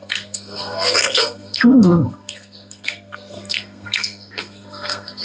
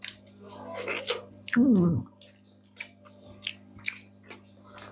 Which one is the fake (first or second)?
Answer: first